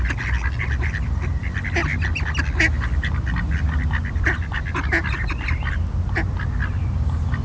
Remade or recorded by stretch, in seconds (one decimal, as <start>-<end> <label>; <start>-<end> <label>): 0.0-7.4 recorded